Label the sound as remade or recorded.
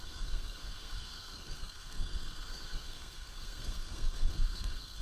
remade